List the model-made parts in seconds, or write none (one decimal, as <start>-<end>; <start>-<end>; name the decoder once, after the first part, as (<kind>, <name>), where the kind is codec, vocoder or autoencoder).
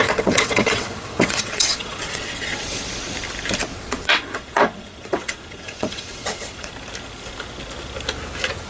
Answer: 0.0-2.8 (vocoder, WaveNeXt); 3.7-6.7